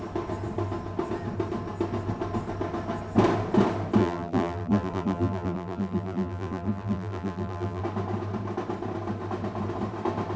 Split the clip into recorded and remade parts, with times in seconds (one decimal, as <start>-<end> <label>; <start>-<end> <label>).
0.0-4.0 recorded; 4.0-7.8 remade; 7.8-10.4 recorded